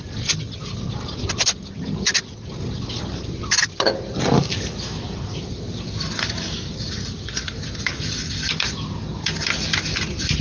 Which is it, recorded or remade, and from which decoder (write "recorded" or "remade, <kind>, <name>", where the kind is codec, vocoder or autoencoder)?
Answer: recorded